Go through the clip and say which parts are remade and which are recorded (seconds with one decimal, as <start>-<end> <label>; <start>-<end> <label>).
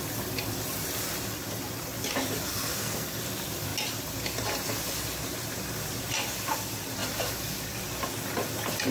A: 0.0-2.5 recorded; 2.5-3.2 remade; 3.2-8.9 recorded